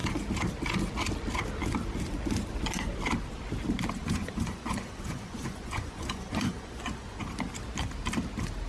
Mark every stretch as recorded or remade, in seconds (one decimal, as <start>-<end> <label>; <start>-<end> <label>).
0.0-4.0 recorded; 4.0-7.3 remade; 7.3-8.7 recorded